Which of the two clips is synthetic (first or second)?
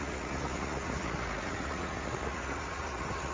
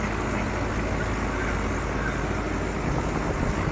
first